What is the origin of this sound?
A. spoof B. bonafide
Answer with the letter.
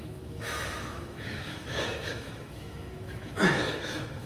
A